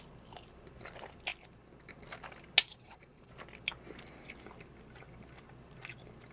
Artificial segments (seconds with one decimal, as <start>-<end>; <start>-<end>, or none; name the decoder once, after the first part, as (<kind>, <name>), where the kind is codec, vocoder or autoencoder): 2.6-3.3 (vocoder, Vocos)